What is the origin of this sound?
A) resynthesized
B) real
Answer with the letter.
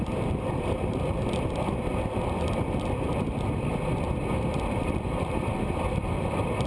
B